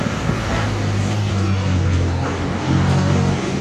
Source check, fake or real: fake